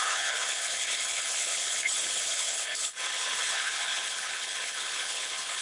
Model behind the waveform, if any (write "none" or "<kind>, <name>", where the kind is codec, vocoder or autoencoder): codec, HILCodec